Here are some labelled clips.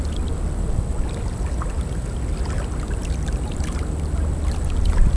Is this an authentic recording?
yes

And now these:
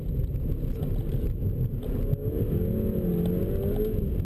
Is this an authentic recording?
yes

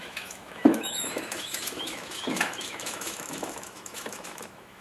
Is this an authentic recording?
no